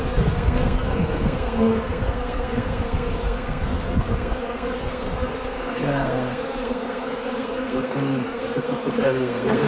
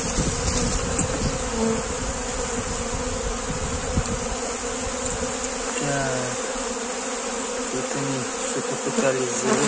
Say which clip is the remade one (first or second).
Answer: first